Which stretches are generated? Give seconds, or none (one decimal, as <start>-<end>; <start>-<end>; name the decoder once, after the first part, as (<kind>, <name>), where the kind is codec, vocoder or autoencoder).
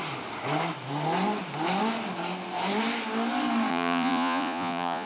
3.7-5.1 (vocoder, Vocos)